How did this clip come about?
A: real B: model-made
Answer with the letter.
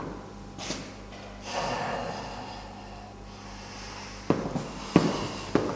A